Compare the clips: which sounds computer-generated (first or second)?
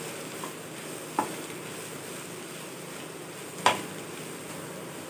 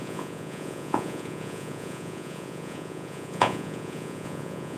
second